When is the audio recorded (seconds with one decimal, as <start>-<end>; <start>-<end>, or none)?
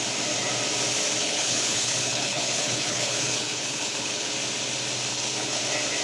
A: 0.0-1.2; 4.3-5.1; 5.6-6.0